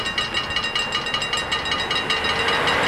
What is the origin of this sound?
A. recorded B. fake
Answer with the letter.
A